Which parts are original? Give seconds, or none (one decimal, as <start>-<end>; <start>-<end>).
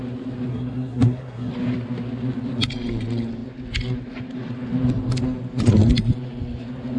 0.0-0.5; 1.5-7.0